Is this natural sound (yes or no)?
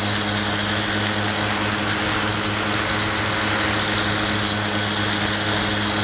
yes